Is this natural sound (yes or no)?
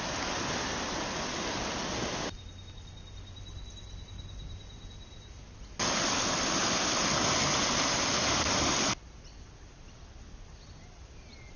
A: yes